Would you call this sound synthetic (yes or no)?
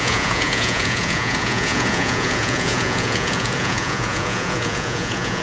yes